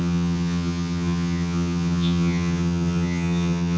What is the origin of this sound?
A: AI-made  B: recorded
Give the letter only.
A